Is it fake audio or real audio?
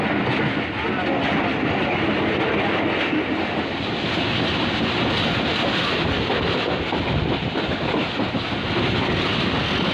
real